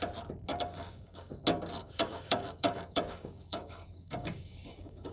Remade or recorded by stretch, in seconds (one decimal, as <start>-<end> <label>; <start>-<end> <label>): 0.0-0.5 recorded; 0.5-1.3 remade; 1.3-1.8 recorded; 1.8-5.1 remade